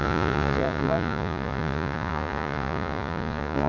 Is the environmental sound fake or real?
fake